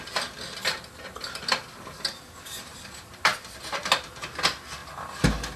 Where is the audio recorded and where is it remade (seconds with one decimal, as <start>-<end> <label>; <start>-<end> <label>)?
0.0-5.6 recorded